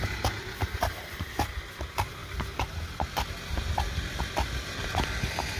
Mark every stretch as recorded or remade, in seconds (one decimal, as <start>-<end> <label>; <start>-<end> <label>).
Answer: 0.0-5.6 recorded